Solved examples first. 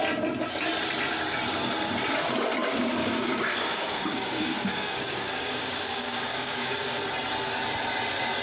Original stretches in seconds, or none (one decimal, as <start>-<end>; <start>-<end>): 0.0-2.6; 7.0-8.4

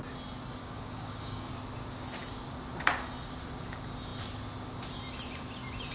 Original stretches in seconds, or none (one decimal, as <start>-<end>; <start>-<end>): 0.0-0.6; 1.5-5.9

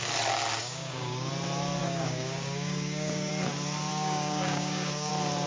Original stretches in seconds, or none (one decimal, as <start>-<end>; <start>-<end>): 0.0-0.6; 1.3-1.8; 3.3-3.9; 5.1-5.5

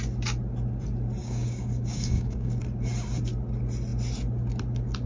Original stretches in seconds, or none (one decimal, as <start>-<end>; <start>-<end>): 0.0-1.2; 2.6-5.1

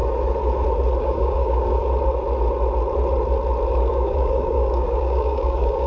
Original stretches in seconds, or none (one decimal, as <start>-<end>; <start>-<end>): 0.0-1.0; 1.8-3.9

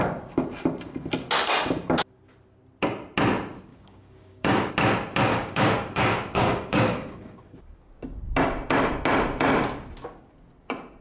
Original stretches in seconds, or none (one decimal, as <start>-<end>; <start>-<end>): 0.0-3.7; 4.7-5.3; 7.4-11.0

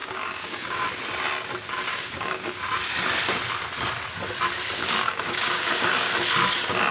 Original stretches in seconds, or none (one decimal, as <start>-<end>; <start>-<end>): 0.9-1.9; 2.6-4.8; 6.1-6.9

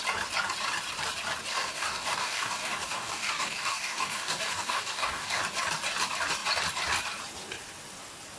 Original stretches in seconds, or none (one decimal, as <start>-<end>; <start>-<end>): 0.0-1.5; 5.4-8.4